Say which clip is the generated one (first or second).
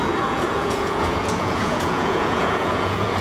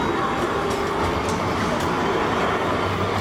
first